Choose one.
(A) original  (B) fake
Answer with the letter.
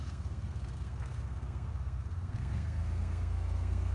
B